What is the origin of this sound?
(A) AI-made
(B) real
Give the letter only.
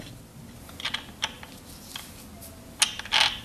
B